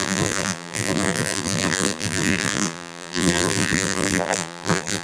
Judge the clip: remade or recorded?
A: remade